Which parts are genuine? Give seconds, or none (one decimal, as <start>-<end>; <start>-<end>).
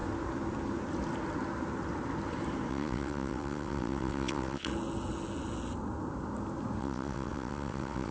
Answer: 0.0-2.7; 4.7-6.8